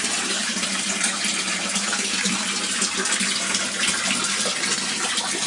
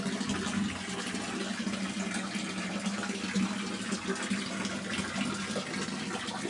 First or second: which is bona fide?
second